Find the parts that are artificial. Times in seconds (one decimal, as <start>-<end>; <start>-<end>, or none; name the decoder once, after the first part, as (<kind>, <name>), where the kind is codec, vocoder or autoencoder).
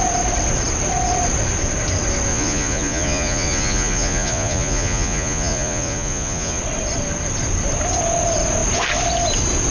2.3-6.6 (vocoder, Vocos)